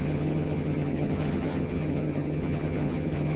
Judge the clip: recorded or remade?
remade